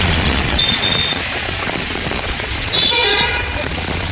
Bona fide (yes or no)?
no